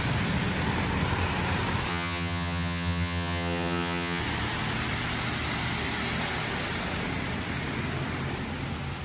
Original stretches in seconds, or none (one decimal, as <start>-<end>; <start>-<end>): 0.0-1.9; 4.2-9.0